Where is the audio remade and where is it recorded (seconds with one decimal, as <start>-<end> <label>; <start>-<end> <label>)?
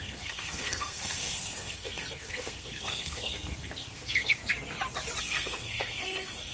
0.0-4.4 remade; 4.4-5.2 recorded; 5.2-6.5 remade